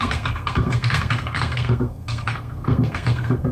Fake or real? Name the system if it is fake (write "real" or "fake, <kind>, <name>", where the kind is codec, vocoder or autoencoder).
fake, codec, SNAC